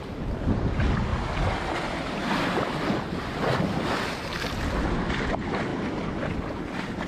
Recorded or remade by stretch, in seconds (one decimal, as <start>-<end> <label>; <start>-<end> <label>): 0.0-7.1 recorded